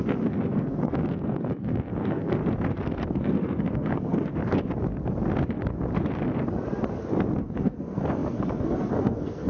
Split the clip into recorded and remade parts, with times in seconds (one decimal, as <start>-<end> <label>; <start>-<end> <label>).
0.0-2.4 remade; 2.4-3.1 recorded; 3.1-4.3 remade; 4.3-7.4 recorded; 7.4-9.5 remade